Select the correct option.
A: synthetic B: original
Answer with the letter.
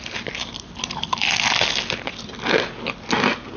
B